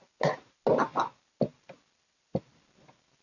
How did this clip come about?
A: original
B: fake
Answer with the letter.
A